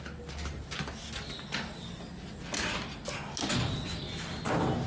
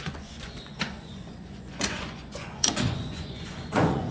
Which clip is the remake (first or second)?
second